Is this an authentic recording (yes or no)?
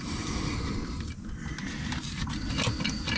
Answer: yes